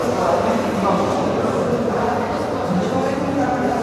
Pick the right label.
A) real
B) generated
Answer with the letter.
B